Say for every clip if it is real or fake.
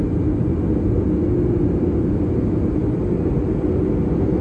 real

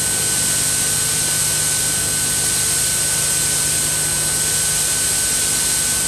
real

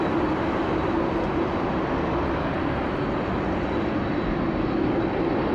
real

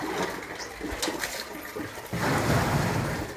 real